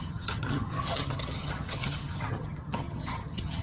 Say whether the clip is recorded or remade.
remade